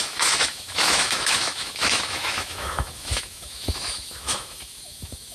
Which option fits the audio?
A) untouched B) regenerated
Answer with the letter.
B